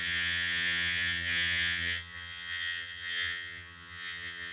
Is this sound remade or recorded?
remade